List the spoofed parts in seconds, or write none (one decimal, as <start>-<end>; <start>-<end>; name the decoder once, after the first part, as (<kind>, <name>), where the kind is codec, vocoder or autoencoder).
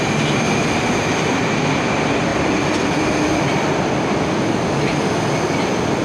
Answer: 2.3-6.0 (vocoder, BigVGAN v2)